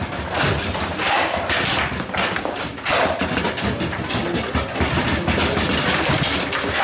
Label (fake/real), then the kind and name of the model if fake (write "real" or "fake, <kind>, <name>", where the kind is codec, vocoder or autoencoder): real